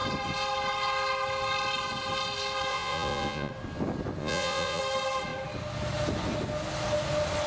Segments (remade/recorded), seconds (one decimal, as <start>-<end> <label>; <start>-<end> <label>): 0.0-2.7 recorded; 2.7-3.5 remade; 3.5-4.2 recorded; 4.2-4.8 remade; 4.8-7.5 recorded